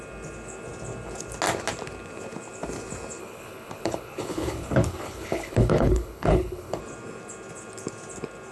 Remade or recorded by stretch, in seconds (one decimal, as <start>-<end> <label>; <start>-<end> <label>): 0.0-3.2 recorded; 3.2-6.8 remade; 6.8-8.5 recorded